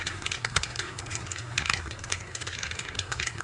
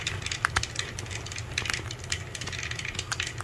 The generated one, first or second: first